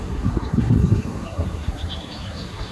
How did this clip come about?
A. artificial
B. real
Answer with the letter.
A